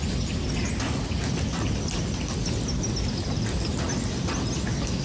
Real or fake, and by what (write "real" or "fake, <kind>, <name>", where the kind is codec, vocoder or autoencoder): real